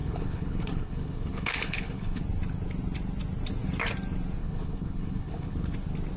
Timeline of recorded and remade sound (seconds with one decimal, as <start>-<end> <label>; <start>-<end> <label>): 0.0-2.2 remade; 2.2-4.4 recorded; 4.4-5.7 remade; 5.7-6.2 recorded